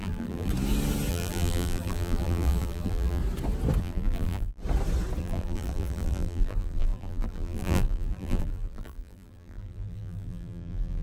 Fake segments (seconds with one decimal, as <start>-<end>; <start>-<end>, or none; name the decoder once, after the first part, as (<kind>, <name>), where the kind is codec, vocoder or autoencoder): 0.0-0.5 (vocoder, BigVGAN v2); 1.1-3.2; 3.8-4.6; 5.2-11.0